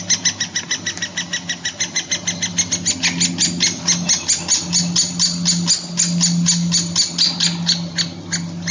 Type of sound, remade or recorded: recorded